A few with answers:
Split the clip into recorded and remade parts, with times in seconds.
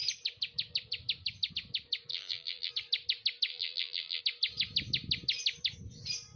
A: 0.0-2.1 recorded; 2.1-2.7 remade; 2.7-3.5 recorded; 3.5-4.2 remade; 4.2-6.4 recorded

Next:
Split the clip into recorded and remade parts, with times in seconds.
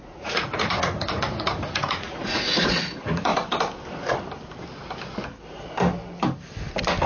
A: 0.0-3.3 remade; 3.3-7.1 recorded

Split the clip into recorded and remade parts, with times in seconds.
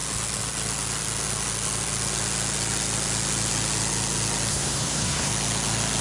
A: 0.0-4.5 recorded; 4.5-5.3 remade; 5.3-6.0 recorded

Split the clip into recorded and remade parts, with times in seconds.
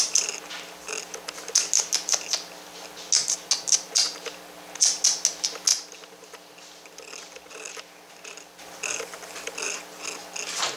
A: 0.0-10.8 recorded